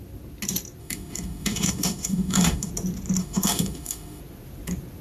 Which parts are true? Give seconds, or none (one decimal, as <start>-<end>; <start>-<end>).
0.0-0.8; 2.7-3.2; 4.2-5.0